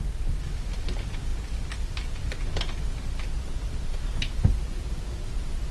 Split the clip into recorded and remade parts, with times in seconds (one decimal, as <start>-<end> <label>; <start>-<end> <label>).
0.0-5.7 recorded